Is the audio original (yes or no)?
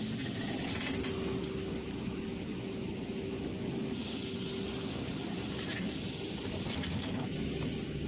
yes